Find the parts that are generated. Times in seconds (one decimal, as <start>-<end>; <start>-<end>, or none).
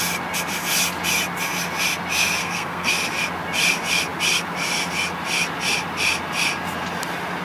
2.4-2.9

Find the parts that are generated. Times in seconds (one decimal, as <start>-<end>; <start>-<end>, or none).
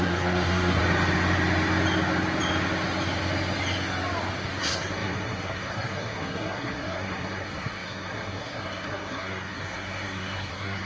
0.0-0.8; 4.6-10.9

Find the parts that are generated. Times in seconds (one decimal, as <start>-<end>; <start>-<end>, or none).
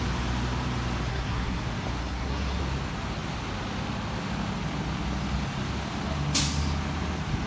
1.1-1.6; 2.0-2.6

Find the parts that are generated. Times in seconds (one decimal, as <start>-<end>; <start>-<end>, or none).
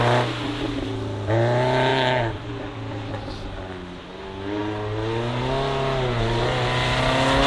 none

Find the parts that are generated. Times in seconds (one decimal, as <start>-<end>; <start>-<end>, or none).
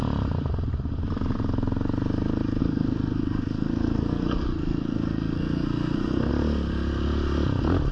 2.6-6.3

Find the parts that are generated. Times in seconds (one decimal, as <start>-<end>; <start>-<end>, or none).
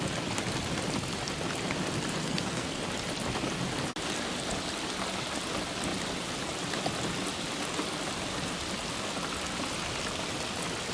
2.2-2.8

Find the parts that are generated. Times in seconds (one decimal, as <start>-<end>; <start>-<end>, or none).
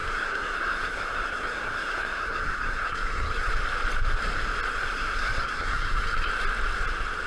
0.0-3.5; 4.7-6.3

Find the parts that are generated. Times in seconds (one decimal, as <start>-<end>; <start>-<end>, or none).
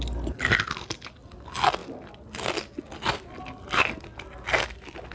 none